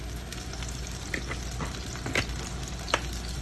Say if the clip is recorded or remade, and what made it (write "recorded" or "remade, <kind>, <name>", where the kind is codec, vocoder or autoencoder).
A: recorded